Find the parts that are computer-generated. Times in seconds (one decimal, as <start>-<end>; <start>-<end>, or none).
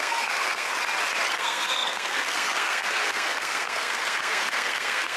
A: 0.0-0.7; 1.3-5.2